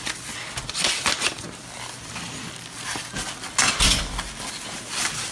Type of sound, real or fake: real